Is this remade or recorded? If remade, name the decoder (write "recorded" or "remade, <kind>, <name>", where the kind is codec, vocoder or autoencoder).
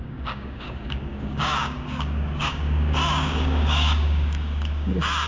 remade, codec, DAC